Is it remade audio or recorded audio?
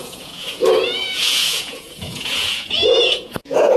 remade